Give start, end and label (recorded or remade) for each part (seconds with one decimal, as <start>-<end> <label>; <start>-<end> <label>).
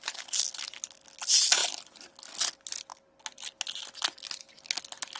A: 0.0-5.2 recorded